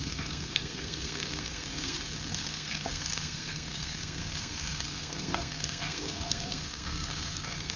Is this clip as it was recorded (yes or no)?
no